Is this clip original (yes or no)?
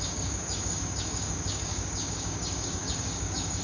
no